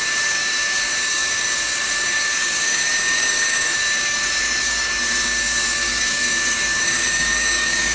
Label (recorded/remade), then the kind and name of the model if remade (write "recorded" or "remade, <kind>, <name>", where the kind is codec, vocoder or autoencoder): remade, codec, DAC